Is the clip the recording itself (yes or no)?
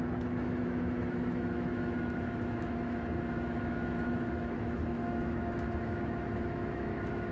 no